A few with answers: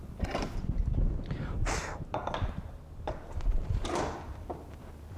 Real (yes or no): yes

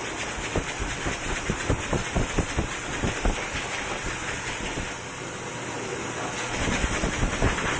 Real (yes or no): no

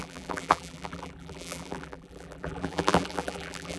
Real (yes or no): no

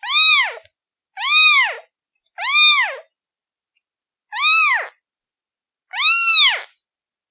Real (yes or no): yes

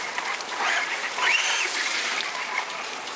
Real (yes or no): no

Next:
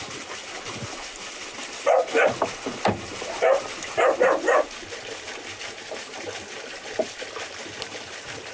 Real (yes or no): no